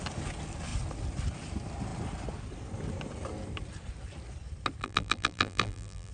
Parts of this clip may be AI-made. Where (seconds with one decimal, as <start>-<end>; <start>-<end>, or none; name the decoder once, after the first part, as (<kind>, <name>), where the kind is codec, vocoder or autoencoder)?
4.8-6.1 (vocoder, BigVGAN v2)